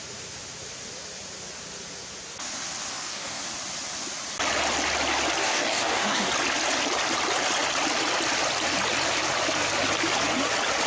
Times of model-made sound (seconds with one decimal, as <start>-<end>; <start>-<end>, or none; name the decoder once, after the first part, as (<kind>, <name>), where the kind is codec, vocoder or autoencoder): 2.9-3.4 (codec, DAC); 5.4-6.3